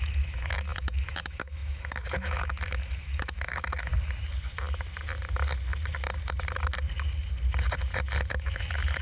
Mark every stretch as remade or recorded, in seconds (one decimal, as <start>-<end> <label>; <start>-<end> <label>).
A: 0.0-3.9 remade; 3.9-8.3 recorded; 8.3-9.0 remade